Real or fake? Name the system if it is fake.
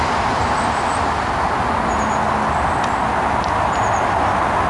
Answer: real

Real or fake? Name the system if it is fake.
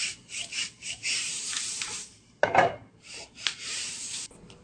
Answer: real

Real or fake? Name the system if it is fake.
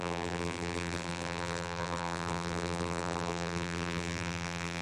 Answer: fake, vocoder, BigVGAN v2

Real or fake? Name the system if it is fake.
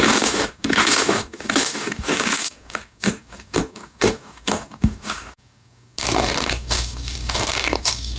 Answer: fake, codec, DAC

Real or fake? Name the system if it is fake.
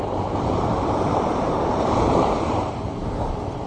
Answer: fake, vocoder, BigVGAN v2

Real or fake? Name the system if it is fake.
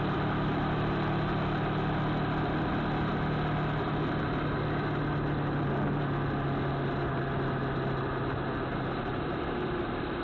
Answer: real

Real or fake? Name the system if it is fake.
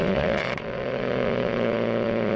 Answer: fake, vocoder, Vocos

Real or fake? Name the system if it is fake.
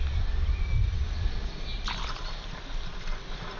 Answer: real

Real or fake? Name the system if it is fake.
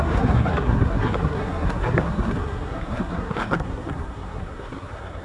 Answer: fake, codec, SNAC